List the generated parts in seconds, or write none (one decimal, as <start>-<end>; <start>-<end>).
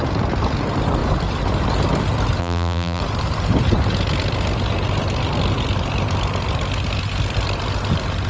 2.4-3.0